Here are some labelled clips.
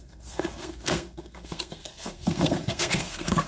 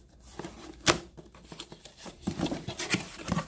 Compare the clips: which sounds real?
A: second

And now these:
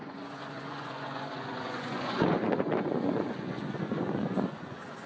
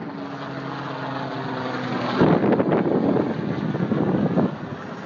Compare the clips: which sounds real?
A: second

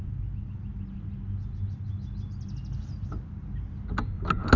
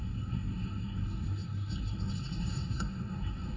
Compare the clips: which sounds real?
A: first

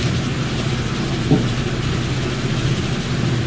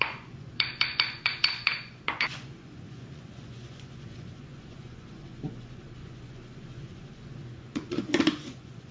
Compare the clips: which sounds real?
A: first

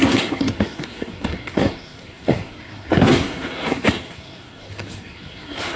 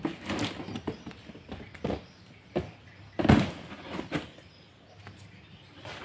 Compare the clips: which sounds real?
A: second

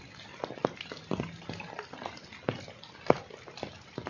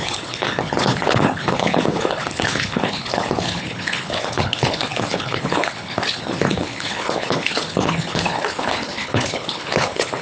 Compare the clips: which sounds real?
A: first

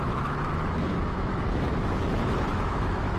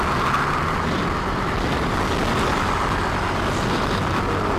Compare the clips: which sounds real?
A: second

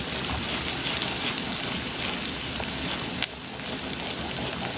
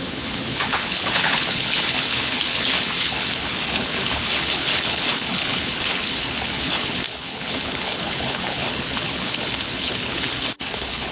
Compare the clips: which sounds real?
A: first